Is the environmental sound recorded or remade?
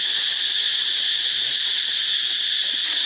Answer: recorded